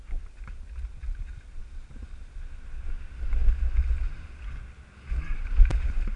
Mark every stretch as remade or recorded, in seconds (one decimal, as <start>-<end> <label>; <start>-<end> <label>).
0.0-6.2 recorded